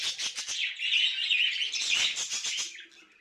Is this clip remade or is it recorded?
recorded